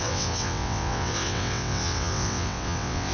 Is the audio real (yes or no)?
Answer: no